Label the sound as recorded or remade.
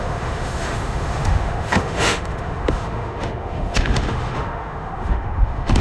remade